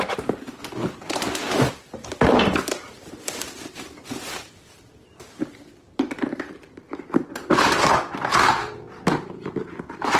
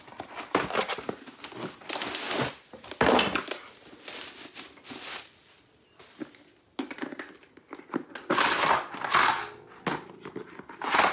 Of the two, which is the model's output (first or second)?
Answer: first